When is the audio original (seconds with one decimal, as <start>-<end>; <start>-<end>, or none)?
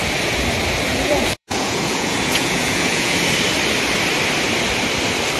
0.0-0.9; 3.2-5.4